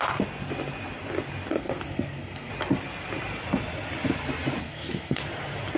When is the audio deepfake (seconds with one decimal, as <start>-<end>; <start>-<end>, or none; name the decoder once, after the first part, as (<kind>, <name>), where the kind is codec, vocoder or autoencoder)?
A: 1.5-2.5 (codec, SNAC); 4.6-5.2